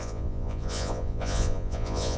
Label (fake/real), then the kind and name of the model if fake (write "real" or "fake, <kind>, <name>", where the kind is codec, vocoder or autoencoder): fake, vocoder, Vocos